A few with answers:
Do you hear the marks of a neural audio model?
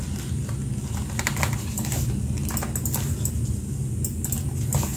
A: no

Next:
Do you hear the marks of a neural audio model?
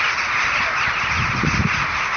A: no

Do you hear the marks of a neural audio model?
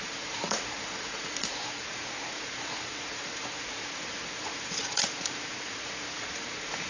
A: yes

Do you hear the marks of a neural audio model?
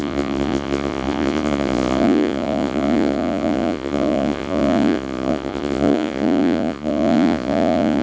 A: yes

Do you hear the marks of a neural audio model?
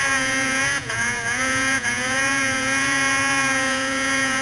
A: yes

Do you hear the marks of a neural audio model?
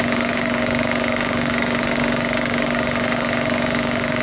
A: yes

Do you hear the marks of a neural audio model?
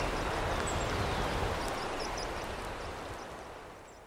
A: no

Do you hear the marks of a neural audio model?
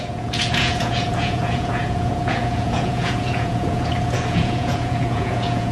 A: yes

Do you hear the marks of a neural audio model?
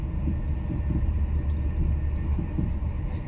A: no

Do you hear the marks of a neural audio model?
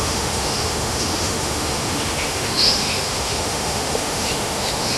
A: yes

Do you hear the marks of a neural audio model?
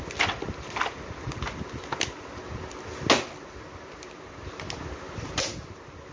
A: no